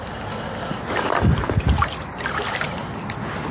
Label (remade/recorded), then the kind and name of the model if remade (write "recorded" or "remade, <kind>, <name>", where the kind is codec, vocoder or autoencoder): recorded